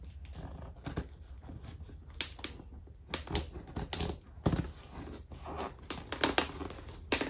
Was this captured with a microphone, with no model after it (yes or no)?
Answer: yes